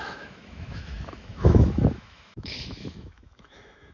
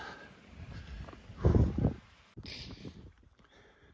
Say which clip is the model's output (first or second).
first